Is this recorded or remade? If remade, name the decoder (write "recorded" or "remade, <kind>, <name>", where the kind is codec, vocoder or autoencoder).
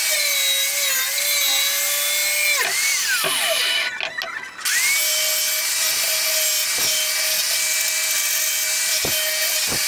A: recorded